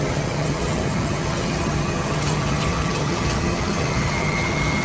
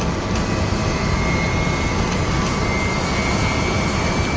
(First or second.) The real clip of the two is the second